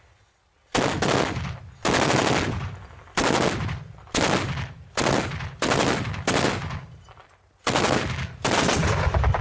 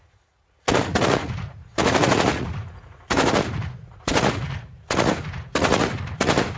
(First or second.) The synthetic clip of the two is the second